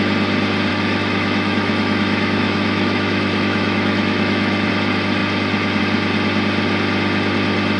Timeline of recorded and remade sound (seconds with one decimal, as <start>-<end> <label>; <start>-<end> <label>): 0.0-0.7 recorded; 0.7-4.7 remade; 4.7-7.8 recorded